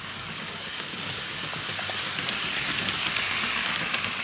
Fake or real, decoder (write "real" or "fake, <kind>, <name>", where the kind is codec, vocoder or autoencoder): fake, codec, DAC